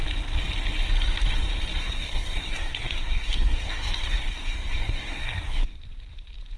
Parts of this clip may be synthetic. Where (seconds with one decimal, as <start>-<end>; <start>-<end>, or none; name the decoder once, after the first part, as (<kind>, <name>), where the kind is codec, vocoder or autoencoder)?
1.8-5.8 (codec, SNAC)